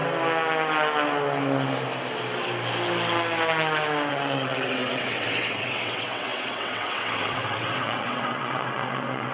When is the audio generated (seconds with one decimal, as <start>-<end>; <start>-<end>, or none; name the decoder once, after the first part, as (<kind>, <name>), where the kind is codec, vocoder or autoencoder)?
4.1-9.3 (vocoder, WaveNeXt)